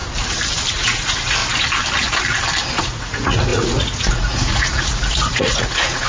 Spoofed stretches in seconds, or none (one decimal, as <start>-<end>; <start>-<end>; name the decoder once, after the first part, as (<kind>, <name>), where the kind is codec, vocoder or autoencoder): 0.7-1.4 (vocoder, Vocos); 2.8-6.1